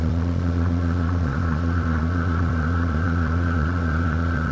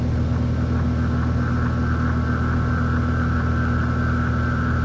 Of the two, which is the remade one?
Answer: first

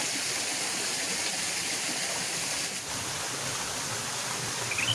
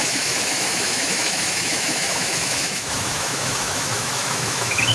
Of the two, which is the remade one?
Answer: second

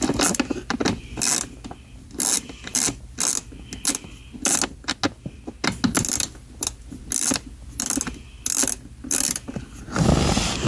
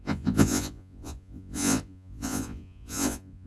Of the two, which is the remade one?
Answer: second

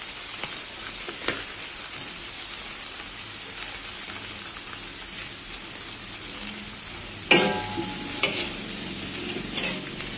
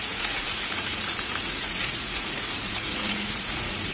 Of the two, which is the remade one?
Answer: second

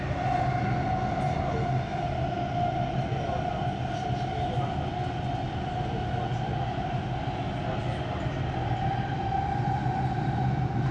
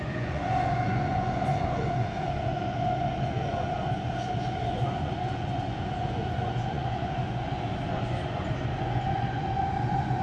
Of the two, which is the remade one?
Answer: second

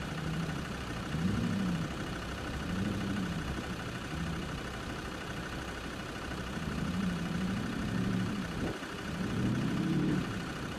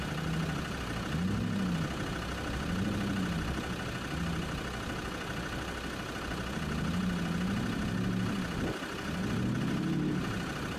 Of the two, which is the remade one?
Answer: first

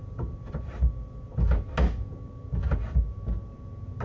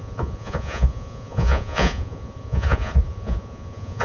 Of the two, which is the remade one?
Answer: second